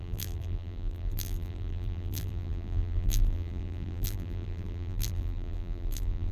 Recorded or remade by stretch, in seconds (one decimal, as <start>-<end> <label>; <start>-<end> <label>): 0.0-6.3 remade